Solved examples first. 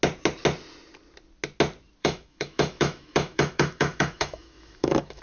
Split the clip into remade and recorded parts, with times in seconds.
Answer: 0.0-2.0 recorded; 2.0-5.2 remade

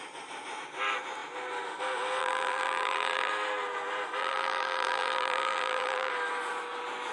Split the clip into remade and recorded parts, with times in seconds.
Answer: 0.0-2.2 recorded; 2.2-3.3 remade; 3.3-4.2 recorded; 4.2-6.1 remade; 6.1-7.1 recorded

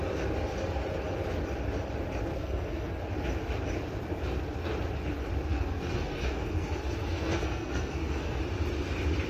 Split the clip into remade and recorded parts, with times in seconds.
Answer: 0.0-2.3 recorded; 2.3-3.0 remade; 3.0-5.5 recorded; 5.5-8.4 remade; 8.4-9.3 recorded

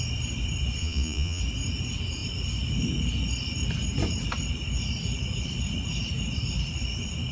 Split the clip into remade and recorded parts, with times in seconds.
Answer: 0.0-0.8 recorded; 0.8-1.4 remade; 1.4-7.3 recorded

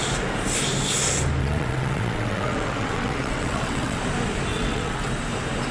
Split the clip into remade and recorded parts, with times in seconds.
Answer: 0.0-1.4 recorded; 1.4-4.0 remade; 4.0-4.5 recorded; 4.5-5.1 remade; 5.1-5.7 recorded